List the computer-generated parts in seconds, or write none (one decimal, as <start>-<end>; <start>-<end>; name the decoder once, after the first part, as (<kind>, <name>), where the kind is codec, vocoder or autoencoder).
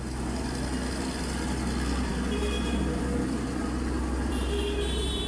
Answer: none